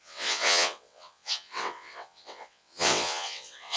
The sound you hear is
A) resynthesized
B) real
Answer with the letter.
A